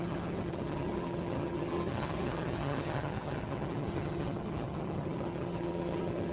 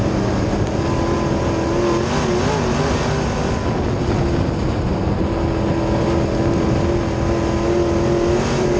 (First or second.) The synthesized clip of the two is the first